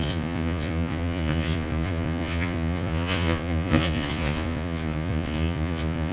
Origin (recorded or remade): remade